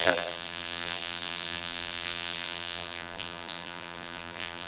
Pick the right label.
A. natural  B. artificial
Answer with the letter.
B